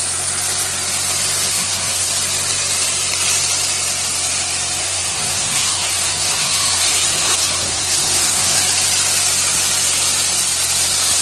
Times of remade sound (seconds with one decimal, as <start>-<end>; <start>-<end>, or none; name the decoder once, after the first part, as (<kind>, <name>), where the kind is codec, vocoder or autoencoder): 1.5-2.1 (codec, SNAC); 4.8-8.6